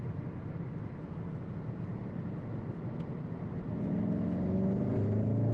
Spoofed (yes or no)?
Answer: no